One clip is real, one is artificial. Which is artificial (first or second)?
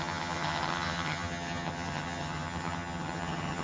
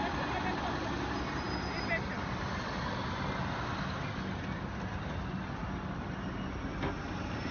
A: first